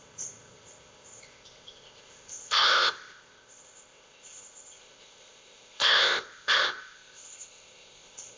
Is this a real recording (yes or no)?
no